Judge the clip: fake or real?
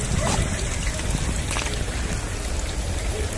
real